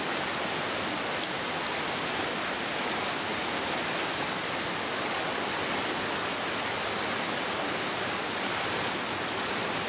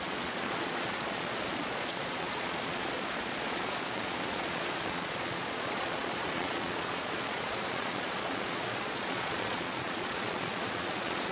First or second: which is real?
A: first